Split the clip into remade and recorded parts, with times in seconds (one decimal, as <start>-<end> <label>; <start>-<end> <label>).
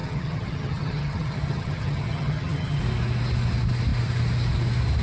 0.0-2.8 remade; 2.8-5.0 recorded